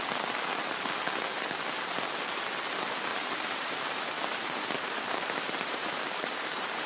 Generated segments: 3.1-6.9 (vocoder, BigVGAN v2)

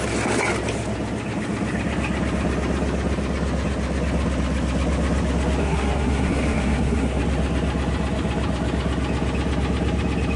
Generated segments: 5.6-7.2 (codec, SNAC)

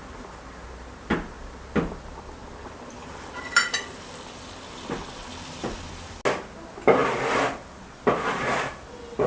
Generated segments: 2.4-4.6 (vocoder, BigVGAN v2)

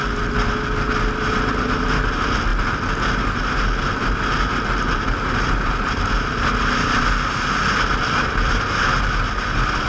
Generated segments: none